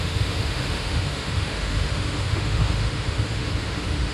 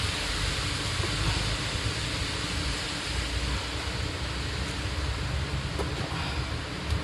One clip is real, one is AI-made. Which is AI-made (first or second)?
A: first